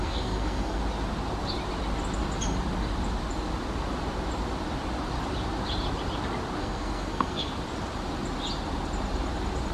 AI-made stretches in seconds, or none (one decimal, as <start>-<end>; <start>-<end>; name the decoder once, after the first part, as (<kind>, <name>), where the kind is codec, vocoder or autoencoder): 0.0-0.8 (codec, SNAC); 6.6-7.5